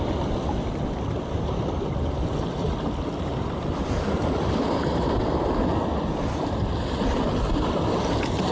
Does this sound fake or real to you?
real